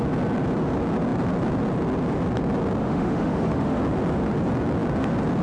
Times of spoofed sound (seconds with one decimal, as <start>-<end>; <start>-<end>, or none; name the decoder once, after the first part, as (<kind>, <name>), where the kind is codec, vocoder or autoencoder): 2.8-3.8 (autoencoder, DAC-VAE)